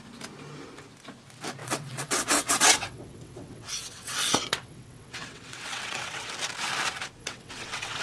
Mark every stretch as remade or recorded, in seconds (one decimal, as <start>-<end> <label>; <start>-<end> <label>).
0.0-1.6 recorded; 1.6-6.3 remade; 6.3-7.2 recorded; 7.2-8.0 remade